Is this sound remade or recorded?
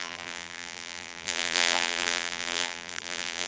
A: remade